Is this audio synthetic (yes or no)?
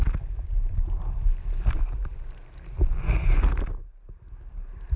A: no